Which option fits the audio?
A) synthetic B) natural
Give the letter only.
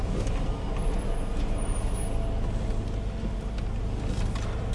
B